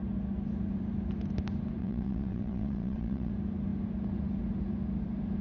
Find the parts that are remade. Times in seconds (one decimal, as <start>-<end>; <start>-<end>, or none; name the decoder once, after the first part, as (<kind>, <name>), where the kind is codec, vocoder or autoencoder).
1.8-3.3 (vocoder, WaveNeXt)